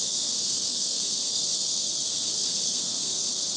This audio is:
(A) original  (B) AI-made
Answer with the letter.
B